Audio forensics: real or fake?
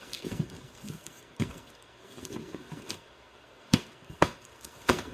fake